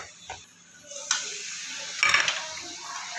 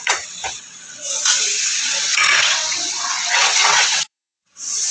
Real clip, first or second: first